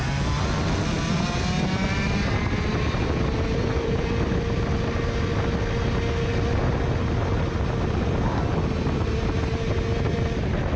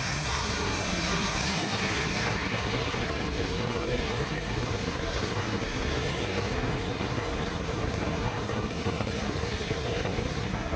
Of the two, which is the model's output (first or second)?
second